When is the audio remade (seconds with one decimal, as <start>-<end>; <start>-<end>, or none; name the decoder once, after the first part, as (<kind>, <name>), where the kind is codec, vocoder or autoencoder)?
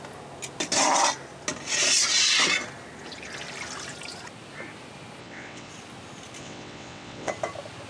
5.2-5.7 (vocoder, WaveNeXt); 6.4-7.3